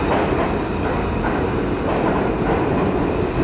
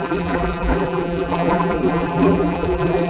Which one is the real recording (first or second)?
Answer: first